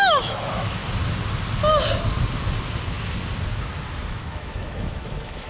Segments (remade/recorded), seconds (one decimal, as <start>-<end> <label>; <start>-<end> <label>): 0.0-0.8 remade; 0.8-4.1 recorded; 4.1-5.5 remade

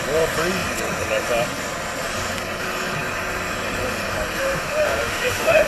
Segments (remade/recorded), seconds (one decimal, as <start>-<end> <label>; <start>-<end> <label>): 0.0-4.4 recorded; 4.4-5.7 remade